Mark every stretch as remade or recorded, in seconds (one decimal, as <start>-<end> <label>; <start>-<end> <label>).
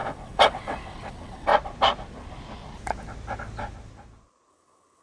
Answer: 0.0-1.5 remade; 1.5-4.5 recorded; 4.5-5.0 remade